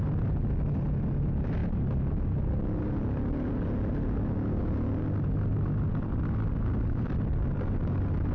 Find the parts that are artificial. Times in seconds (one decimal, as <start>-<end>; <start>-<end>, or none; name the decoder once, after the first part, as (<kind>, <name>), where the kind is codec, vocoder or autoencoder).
none